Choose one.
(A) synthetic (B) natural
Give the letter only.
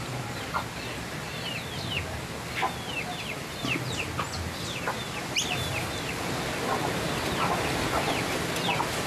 B